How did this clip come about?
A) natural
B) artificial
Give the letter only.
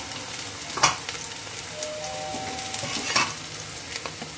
A